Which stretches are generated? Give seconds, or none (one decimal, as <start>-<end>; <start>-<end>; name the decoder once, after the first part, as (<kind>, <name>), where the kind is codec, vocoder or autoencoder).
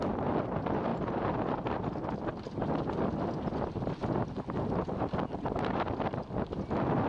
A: none